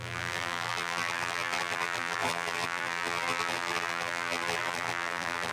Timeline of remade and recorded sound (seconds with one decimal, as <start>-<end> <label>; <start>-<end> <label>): 0.0-5.5 remade

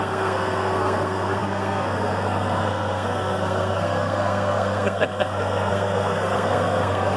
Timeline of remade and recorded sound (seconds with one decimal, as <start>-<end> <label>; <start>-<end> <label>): 0.0-7.2 remade